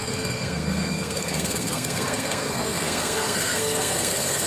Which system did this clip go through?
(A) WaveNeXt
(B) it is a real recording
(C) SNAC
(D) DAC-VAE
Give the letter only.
C